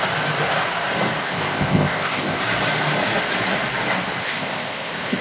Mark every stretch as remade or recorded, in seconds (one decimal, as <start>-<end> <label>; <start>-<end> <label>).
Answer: 0.0-1.2 recorded; 1.2-2.4 remade; 2.4-4.2 recorded; 4.2-5.2 remade